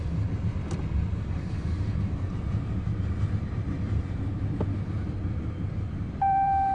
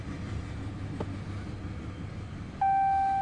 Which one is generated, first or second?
first